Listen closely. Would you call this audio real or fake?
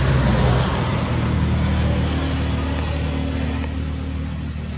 real